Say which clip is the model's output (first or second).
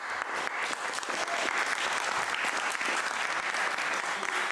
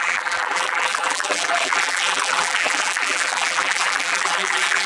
second